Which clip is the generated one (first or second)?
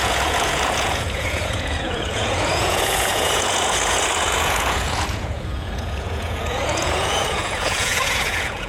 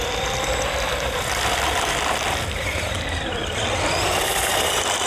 first